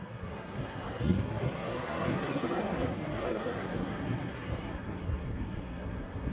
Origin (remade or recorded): remade